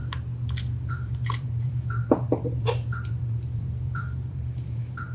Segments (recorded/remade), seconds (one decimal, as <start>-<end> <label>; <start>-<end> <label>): 0.0-0.9 recorded; 0.9-5.1 remade